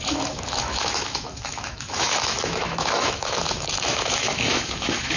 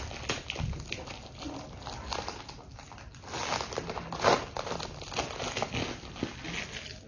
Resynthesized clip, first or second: first